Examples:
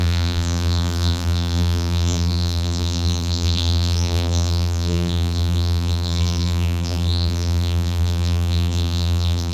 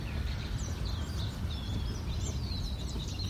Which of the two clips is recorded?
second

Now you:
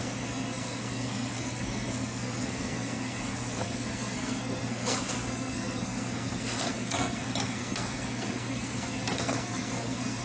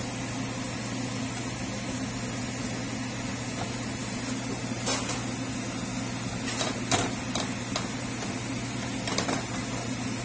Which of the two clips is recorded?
second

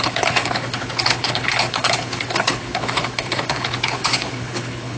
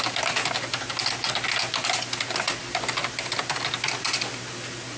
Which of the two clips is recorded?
second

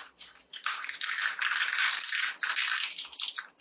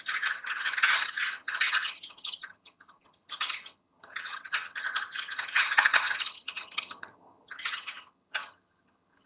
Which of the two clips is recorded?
first